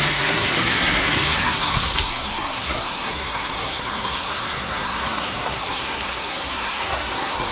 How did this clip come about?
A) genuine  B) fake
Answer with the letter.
B